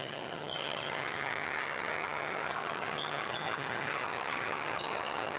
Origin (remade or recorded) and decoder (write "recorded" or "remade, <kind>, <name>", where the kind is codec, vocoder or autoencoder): remade, vocoder, HiFi-GAN